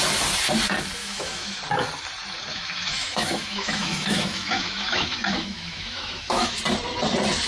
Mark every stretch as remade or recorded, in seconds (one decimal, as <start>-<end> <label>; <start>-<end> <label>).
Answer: 0.0-1.0 recorded; 1.0-1.6 remade; 1.6-2.5 recorded; 2.5-6.6 remade; 6.6-7.5 recorded